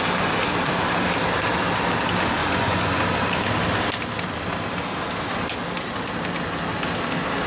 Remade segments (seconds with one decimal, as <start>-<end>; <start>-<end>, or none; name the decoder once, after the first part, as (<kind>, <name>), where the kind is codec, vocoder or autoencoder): 2.4-3.0 (vocoder, Vocos)